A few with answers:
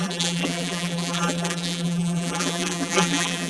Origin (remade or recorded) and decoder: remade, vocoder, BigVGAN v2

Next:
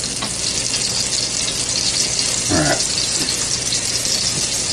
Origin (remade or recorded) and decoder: recorded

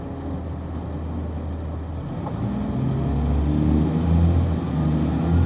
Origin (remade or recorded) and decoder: recorded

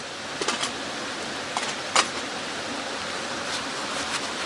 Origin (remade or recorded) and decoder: recorded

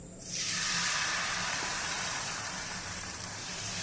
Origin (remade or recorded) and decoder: remade, vocoder, BigVGAN v2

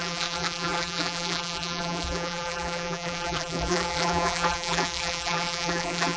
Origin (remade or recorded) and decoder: remade, vocoder, BigVGAN v2